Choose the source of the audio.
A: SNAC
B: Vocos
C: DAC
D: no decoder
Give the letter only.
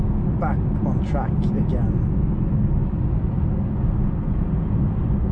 D